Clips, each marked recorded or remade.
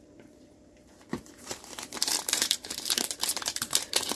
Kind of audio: remade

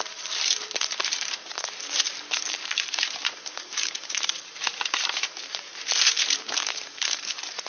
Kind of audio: remade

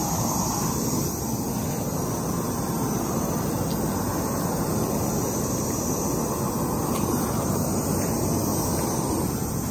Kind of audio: recorded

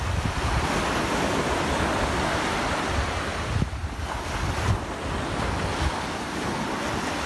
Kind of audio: recorded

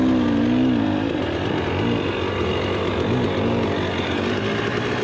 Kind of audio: recorded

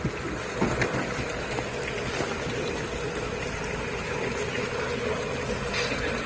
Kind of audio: recorded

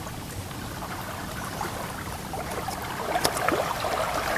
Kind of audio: remade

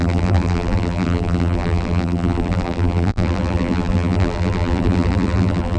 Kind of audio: remade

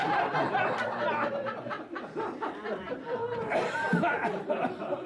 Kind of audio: remade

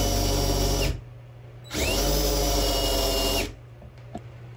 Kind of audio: recorded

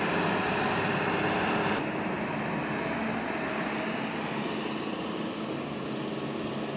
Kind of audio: recorded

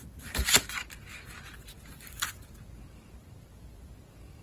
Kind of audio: remade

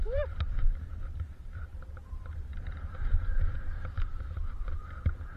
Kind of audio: remade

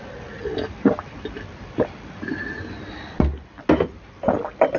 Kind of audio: recorded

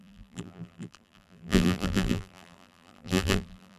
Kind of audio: remade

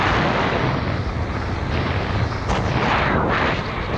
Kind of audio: recorded